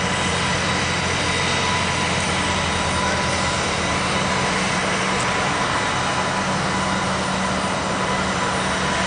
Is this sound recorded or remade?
recorded